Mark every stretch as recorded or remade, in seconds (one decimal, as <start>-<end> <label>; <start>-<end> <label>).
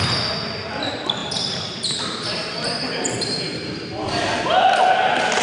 0.0-1.2 recorded; 1.2-4.4 remade; 4.4-5.4 recorded